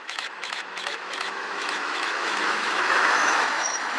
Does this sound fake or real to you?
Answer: fake